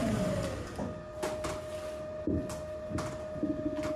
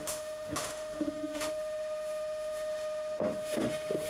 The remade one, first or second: second